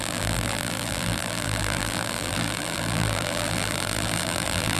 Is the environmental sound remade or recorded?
remade